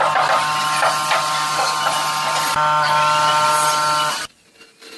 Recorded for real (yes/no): yes